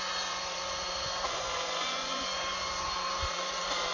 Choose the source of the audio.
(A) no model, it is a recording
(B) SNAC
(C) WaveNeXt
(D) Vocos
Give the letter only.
D